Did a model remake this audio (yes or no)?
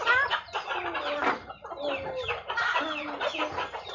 no